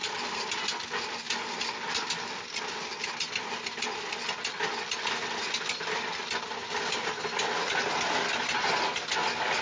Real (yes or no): yes